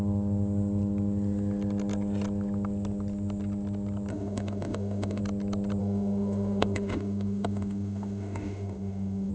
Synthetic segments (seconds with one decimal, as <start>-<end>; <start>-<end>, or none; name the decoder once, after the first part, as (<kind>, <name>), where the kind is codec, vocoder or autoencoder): 4.1-5.2 (autoencoder, DAC-VAE); 5.8-9.3